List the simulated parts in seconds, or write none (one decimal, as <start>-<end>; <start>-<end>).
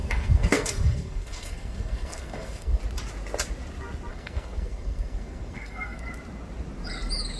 0.0-2.8; 4.1-6.1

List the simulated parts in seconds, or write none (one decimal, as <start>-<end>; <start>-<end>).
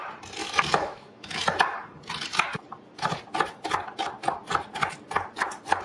0.4-1.4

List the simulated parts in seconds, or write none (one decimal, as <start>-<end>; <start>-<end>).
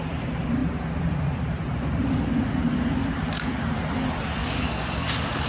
4.4-5.5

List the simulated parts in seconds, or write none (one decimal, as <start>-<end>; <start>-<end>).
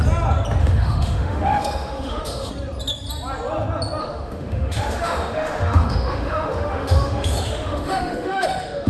0.6-2.5; 4.0-8.9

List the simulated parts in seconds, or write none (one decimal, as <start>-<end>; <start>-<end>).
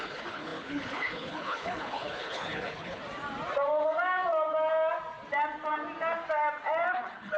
0.0-3.0; 6.9-7.4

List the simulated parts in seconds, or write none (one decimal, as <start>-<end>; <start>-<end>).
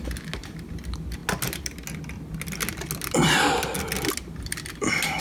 none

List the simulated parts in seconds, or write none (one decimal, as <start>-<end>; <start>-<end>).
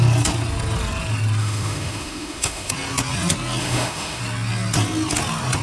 1.4-2.7; 3.6-4.2